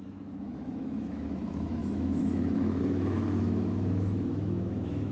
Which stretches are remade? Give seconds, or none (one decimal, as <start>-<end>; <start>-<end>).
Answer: 0.0-5.1